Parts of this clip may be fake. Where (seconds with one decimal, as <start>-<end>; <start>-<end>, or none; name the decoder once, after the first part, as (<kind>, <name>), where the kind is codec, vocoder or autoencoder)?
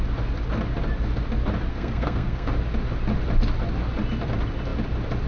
1.7-2.5 (codec, SNAC)